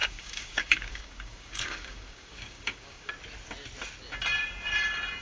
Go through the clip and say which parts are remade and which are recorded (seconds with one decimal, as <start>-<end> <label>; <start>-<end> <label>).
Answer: 0.0-3.1 remade; 3.1-5.2 recorded